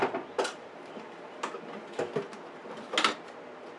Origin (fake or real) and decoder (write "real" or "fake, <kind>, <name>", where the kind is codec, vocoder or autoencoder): real